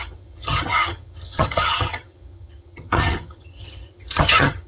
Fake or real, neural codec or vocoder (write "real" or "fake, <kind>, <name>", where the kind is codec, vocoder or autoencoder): fake, vocoder, HiFi-GAN